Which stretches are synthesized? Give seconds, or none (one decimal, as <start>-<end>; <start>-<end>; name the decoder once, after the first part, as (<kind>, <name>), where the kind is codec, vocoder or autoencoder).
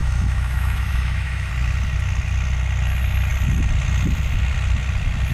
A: 0.0-1.5 (autoencoder, DAC-VAE)